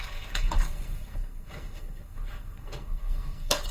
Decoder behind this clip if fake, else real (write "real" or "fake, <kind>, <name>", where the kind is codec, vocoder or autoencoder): fake, codec, SNAC